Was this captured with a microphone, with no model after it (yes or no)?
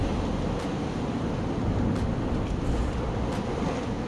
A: yes